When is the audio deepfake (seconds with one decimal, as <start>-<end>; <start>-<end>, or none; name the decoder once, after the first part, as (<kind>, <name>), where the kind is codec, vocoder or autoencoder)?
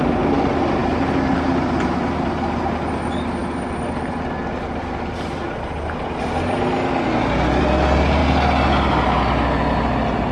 none